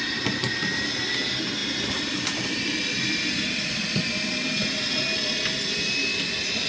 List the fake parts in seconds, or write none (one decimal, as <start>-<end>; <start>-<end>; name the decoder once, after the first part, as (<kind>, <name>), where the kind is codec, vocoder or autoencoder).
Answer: none